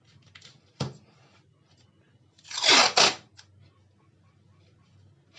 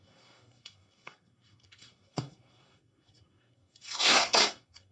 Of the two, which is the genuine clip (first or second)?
first